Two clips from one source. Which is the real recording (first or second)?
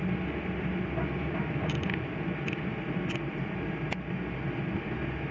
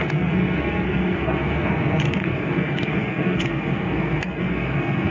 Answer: first